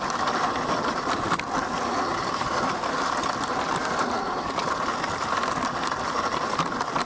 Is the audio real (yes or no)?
yes